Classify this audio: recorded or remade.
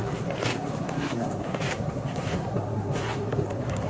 remade